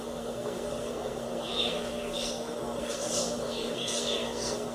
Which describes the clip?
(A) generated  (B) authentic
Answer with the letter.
A